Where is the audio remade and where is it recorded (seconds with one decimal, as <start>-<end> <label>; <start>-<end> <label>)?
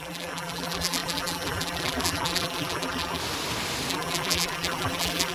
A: 0.0-3.2 remade; 3.2-3.9 recorded; 3.9-5.3 remade